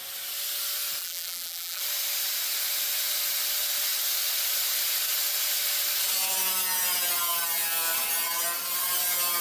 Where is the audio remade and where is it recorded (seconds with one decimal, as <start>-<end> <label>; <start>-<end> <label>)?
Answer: 0.0-1.0 recorded; 1.0-1.8 remade; 1.8-9.4 recorded